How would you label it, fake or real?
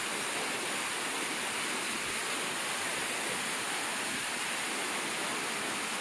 real